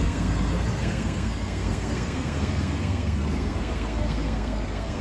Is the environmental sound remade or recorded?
remade